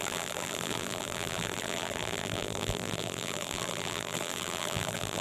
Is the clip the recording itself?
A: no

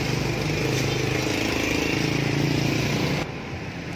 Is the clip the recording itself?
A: yes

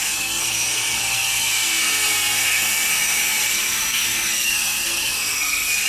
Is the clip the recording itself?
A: no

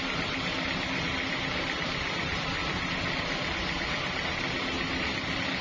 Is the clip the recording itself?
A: yes